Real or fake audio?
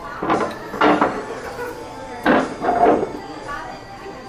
real